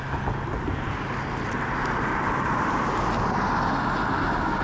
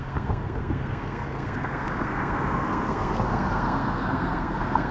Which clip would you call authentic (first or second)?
first